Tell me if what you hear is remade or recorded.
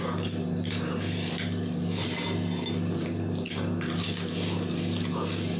recorded